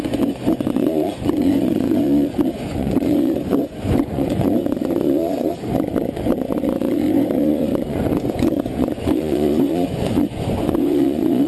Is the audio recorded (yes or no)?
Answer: no